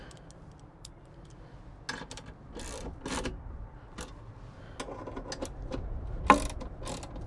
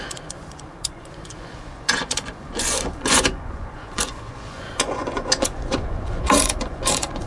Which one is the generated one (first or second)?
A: second